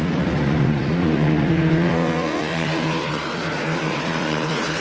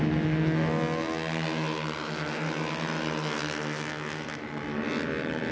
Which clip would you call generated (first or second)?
first